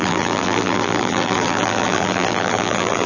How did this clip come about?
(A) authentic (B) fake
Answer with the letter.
B